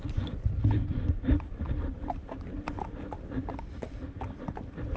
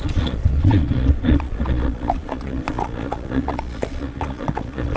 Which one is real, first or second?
first